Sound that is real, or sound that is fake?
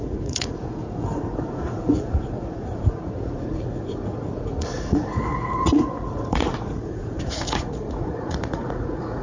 fake